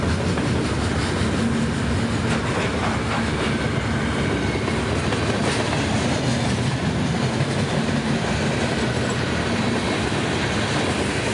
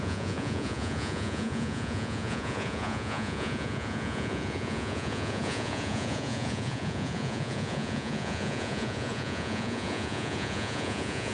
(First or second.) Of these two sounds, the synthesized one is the second